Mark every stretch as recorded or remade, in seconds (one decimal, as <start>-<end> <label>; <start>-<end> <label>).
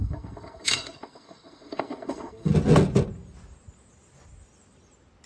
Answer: 0.0-2.5 remade; 2.5-5.3 recorded